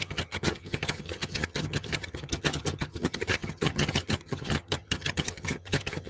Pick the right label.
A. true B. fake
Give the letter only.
B